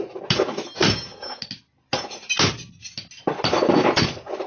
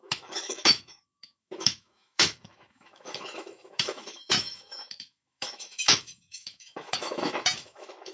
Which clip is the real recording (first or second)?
first